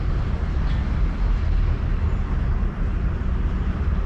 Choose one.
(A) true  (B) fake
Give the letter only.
A